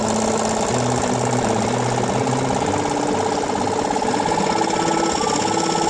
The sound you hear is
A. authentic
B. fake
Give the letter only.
A